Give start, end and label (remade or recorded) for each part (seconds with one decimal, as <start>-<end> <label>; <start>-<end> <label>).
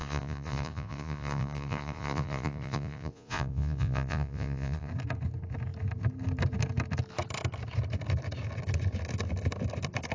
0.0-4.9 remade; 4.9-10.1 recorded